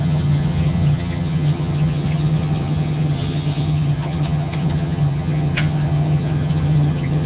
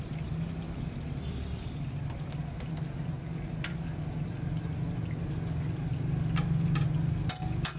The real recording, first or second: second